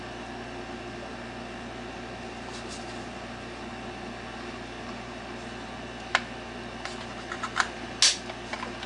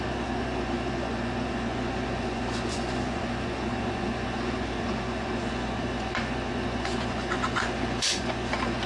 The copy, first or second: second